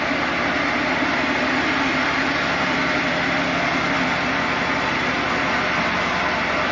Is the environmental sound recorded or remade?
recorded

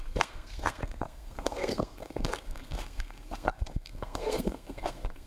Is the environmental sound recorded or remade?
remade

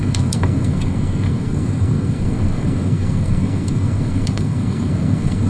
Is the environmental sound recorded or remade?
remade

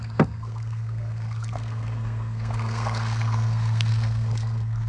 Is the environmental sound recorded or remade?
remade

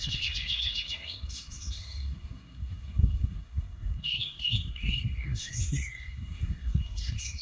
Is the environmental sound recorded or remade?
remade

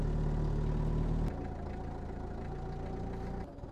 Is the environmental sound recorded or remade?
recorded